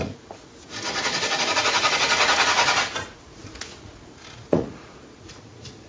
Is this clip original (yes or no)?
no